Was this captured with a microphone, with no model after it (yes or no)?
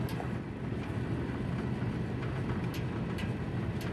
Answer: yes